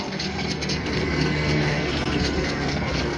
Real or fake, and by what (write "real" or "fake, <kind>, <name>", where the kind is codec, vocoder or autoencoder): fake, codec, SNAC